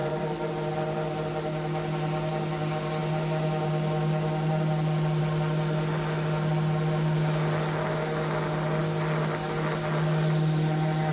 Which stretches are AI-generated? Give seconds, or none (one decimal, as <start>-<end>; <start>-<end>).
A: 0.0-0.5